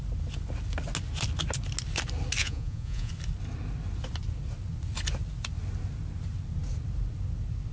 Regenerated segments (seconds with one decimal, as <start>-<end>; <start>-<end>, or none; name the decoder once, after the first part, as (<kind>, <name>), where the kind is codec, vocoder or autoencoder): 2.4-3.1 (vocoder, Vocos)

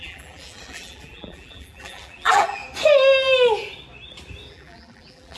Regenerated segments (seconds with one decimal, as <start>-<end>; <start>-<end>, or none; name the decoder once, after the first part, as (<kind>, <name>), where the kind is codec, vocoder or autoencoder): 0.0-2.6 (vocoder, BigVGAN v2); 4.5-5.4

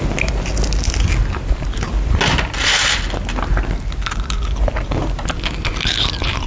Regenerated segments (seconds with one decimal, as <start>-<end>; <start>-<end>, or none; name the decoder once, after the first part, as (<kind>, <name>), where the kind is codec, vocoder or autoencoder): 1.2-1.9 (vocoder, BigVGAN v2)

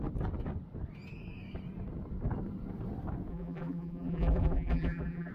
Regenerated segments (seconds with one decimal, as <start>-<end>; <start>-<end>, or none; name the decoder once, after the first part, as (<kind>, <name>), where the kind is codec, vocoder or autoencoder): 3.3-5.3 (vocoder, BigVGAN v2)